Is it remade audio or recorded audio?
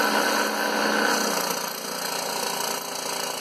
recorded